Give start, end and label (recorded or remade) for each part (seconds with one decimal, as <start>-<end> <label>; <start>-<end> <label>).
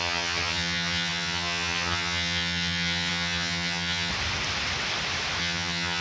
0.0-4.1 remade; 4.1-5.4 recorded; 5.4-6.0 remade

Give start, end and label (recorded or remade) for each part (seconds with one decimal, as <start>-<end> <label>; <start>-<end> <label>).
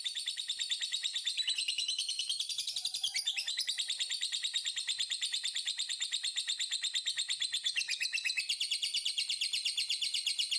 0.0-6.3 remade; 6.3-8.7 recorded; 8.7-10.6 remade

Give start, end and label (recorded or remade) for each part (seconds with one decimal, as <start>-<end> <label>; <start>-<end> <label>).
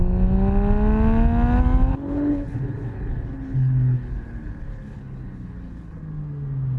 0.0-1.9 recorded; 1.9-6.0 remade; 6.0-6.8 recorded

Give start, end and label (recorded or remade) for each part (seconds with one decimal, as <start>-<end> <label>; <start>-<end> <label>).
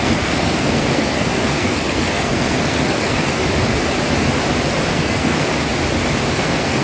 0.0-3.4 remade; 3.4-4.9 recorded; 4.9-5.5 remade; 5.5-6.3 recorded; 6.3-6.8 remade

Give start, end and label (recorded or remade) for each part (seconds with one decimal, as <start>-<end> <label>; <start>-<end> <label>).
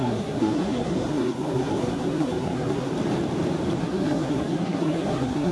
0.0-2.9 remade; 2.9-3.8 recorded; 3.8-5.5 remade